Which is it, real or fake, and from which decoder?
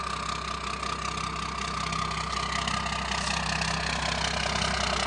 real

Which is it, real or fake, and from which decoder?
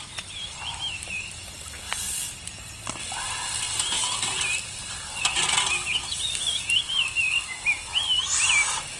real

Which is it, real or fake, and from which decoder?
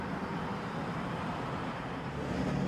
real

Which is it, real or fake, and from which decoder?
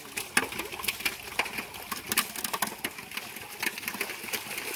real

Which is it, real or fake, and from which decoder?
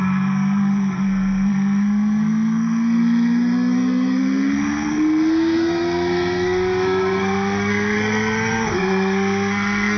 fake, codec, SNAC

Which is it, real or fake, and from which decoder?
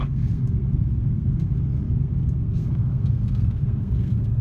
fake, codec, SNAC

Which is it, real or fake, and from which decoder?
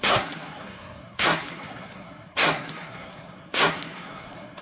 fake, codec, SNAC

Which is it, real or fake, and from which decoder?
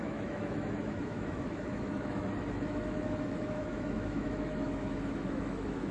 fake, autoencoder, DAC-VAE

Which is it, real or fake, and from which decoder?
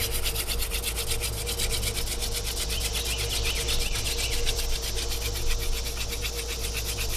real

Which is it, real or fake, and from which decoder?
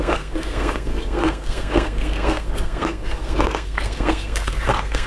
fake, codec, SNAC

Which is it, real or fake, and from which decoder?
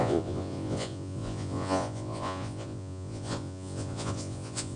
fake, vocoder, Vocos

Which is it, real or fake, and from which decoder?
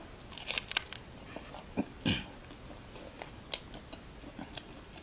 real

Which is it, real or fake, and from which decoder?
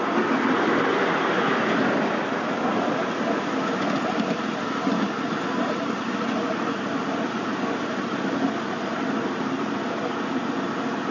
real